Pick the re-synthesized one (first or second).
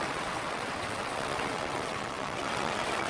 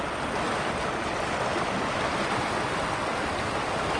first